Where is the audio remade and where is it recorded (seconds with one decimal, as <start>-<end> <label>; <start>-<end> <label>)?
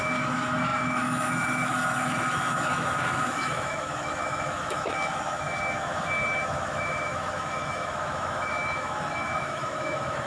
0.0-10.3 remade